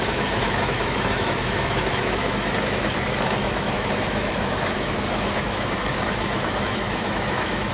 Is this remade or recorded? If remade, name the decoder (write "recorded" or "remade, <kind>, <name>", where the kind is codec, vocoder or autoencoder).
remade, autoencoder, DAC-VAE